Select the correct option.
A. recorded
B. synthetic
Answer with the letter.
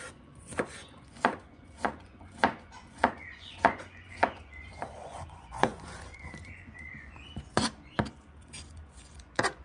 B